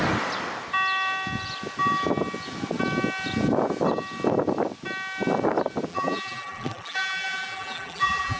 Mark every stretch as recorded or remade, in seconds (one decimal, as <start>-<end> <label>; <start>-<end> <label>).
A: 0.0-5.9 recorded; 5.9-8.4 remade